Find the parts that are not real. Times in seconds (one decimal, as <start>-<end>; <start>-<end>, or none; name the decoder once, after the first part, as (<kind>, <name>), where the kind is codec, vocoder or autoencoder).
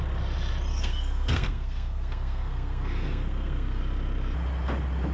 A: 0.7-3.8 (codec, SNAC)